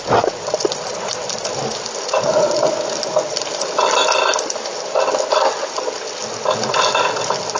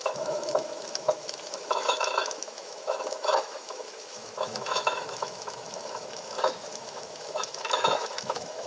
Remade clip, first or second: second